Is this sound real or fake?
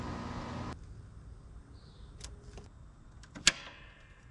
real